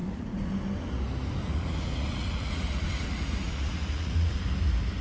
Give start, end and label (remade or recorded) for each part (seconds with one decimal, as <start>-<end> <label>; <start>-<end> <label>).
0.0-0.5 remade; 0.5-1.4 recorded; 1.4-4.4 remade; 4.4-5.0 recorded